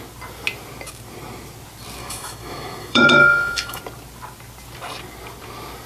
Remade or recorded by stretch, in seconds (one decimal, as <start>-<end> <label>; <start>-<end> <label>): 0.0-2.0 recorded; 2.0-3.8 remade; 3.8-5.9 recorded